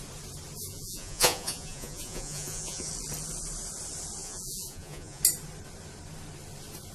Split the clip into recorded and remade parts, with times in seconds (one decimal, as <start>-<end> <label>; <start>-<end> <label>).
0.0-0.7 recorded; 0.7-2.9 remade; 2.9-4.2 recorded; 4.2-5.2 remade; 5.2-6.9 recorded